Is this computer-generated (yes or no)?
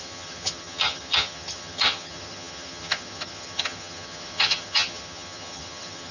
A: yes